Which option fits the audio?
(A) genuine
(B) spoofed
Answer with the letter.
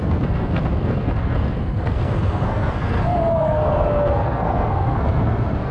B